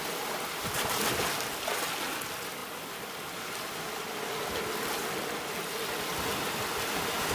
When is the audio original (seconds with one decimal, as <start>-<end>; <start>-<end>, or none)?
0.0-7.3